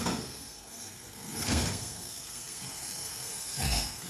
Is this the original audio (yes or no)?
no